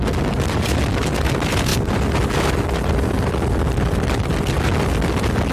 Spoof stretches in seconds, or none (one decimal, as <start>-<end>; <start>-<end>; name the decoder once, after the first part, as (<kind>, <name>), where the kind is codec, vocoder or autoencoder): none